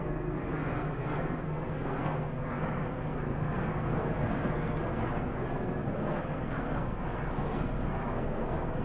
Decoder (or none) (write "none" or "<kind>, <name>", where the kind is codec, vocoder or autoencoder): codec, SNAC